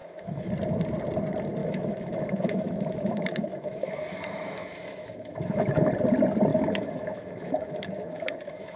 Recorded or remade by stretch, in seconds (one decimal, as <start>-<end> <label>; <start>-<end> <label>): 0.0-0.5 remade; 0.5-1.6 recorded; 1.6-5.9 remade; 5.9-6.5 recorded; 6.5-8.8 remade